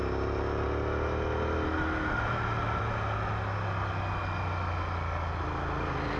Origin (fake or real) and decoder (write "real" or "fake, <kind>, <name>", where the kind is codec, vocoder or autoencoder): real